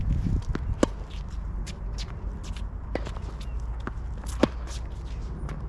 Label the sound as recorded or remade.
recorded